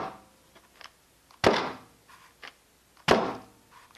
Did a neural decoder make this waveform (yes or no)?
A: no